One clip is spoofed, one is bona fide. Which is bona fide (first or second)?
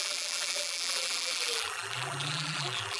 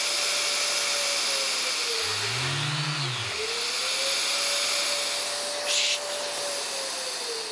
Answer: second